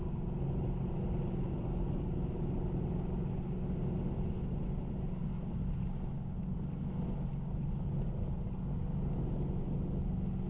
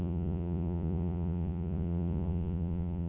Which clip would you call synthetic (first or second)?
second